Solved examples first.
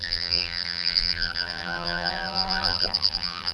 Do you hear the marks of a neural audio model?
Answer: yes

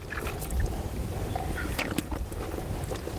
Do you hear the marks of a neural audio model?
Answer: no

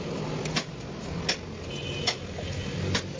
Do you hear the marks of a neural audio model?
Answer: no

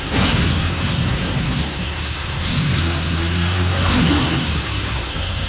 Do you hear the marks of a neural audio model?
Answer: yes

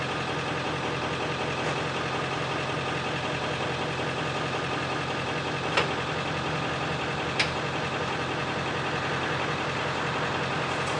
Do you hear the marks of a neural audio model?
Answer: no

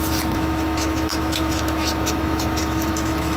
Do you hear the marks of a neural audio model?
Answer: yes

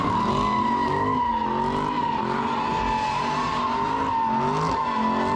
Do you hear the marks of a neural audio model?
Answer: no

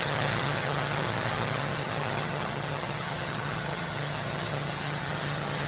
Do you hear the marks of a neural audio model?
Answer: yes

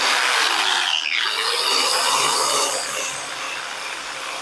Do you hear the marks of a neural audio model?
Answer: no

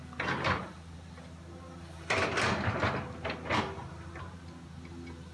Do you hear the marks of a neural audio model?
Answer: no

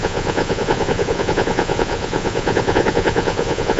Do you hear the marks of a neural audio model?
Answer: yes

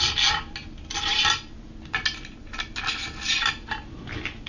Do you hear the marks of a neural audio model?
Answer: no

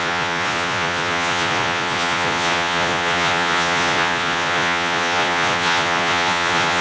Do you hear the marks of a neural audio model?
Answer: yes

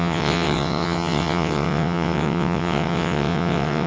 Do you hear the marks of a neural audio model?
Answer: yes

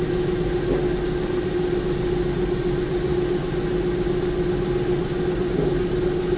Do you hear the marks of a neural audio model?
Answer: no